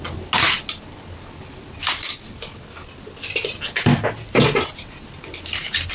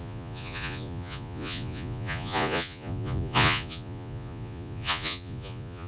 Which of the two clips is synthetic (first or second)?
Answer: second